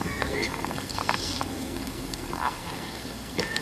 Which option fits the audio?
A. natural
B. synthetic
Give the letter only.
B